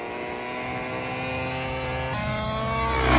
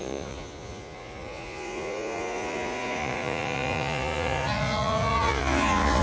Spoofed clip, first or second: second